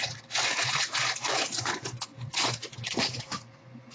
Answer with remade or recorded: remade